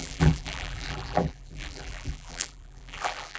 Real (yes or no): no